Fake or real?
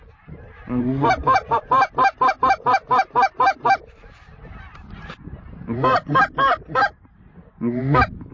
fake